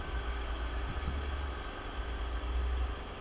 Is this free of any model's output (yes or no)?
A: yes